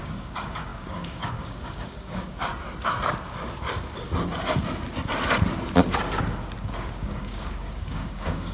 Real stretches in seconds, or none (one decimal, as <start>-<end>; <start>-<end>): 2.5-6.6